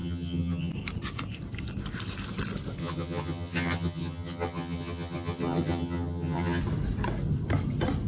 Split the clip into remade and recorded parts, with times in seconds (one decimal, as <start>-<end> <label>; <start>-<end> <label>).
0.0-0.7 remade; 0.7-2.8 recorded; 2.8-6.6 remade; 6.6-8.1 recorded